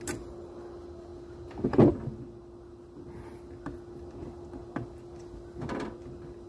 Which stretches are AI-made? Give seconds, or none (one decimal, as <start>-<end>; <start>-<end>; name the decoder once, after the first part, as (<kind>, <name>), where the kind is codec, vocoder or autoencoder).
none